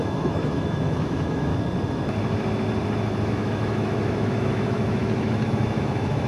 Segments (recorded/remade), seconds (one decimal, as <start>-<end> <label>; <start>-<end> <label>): 0.0-1.5 remade; 1.5-3.3 recorded; 3.3-6.3 remade